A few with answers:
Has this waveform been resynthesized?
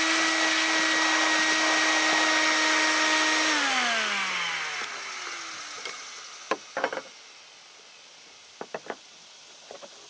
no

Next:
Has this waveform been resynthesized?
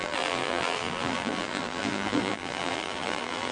yes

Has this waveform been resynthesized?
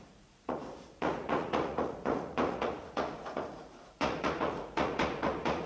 yes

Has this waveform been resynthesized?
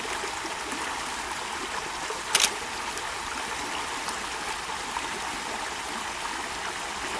no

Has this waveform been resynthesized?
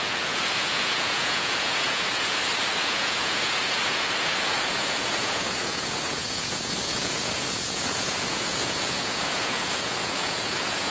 yes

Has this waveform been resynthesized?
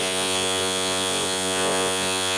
yes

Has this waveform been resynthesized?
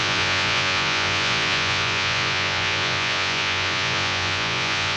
yes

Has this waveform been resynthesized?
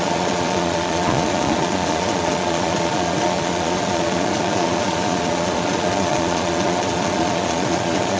yes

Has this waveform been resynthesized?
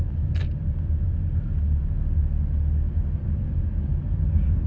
no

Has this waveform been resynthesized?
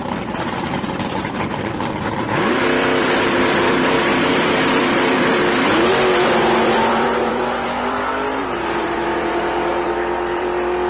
yes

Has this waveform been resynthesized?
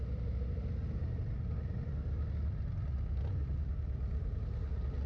no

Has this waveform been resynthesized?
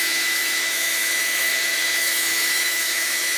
yes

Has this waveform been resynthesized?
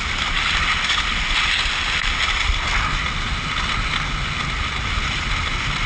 no